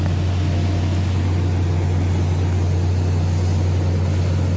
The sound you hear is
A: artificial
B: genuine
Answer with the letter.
B